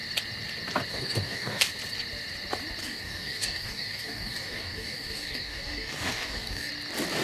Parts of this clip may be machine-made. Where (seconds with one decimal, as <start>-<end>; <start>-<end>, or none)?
0.9-1.6; 2.8-6.7